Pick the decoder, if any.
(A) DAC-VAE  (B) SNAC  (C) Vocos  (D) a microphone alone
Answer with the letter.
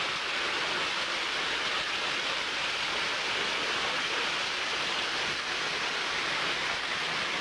D